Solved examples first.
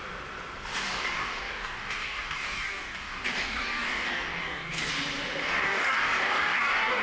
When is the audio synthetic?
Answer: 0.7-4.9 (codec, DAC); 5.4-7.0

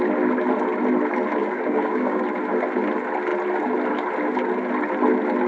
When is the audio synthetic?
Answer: 1.4-2.2 (codec, DAC)

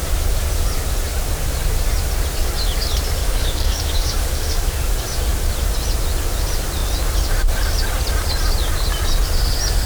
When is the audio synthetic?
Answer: 3.2-4.8 (codec, DAC)

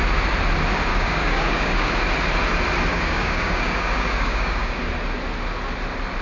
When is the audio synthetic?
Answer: 0.9-1.9 (codec, DAC); 2.9-4.8

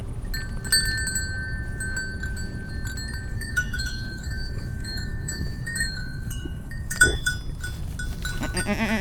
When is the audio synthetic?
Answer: 3.3-7.3 (codec, DAC)

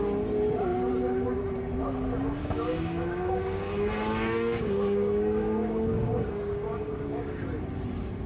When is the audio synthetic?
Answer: 2.4-7.4 (codec, DAC)